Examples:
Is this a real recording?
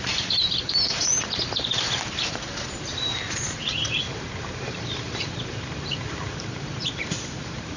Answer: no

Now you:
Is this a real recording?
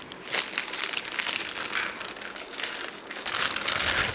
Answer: yes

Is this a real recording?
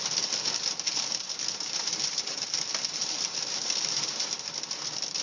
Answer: yes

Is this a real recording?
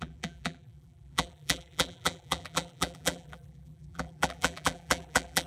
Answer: no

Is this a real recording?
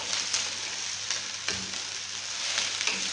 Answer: yes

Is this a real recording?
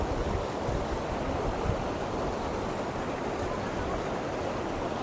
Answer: yes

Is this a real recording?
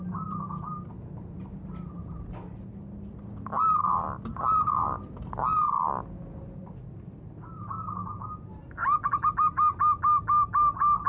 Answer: yes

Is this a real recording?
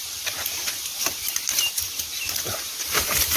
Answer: no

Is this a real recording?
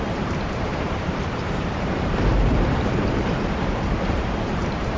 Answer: no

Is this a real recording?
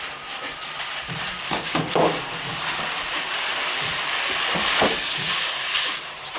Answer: no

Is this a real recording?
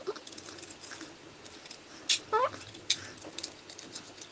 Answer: yes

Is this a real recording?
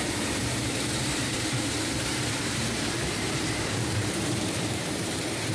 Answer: no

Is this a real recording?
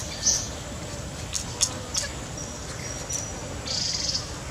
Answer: yes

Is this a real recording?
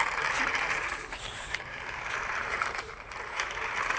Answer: no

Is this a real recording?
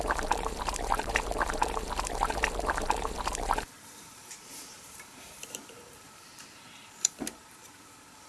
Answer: no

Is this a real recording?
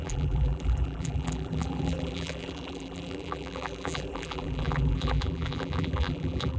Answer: no